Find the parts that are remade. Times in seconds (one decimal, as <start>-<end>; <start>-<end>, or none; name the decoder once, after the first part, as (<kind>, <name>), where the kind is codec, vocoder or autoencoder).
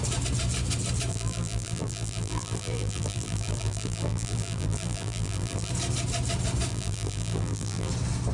1.1-5.7 (vocoder, BigVGAN v2); 6.7-7.9